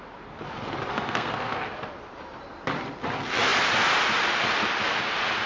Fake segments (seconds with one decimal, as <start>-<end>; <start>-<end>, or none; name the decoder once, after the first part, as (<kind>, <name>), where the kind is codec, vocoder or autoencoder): 0.9-1.6 (codec, SNAC)